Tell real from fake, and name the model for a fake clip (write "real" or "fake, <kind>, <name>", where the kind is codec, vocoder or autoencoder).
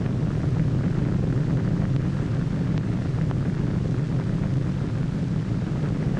real